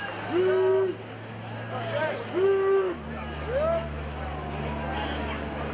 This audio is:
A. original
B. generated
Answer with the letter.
A